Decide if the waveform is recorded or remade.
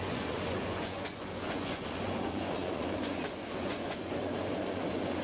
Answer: remade